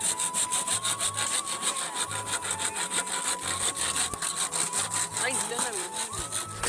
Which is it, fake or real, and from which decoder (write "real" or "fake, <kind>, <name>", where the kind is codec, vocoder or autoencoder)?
real